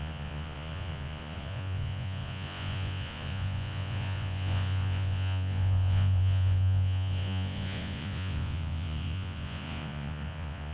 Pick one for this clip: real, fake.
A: fake